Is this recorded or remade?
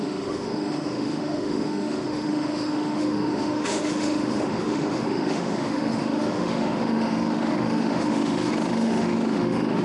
remade